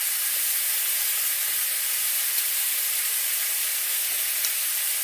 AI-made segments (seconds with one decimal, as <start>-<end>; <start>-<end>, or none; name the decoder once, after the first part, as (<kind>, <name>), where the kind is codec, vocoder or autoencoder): 2.5-3.1 (vocoder, BigVGAN v2)